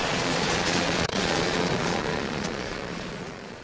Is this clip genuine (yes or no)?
no